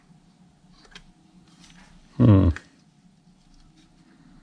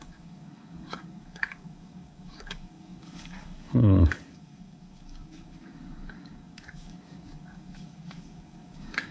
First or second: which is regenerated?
second